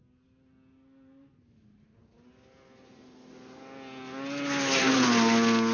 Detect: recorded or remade recorded